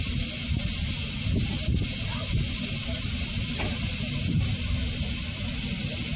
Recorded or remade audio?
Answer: recorded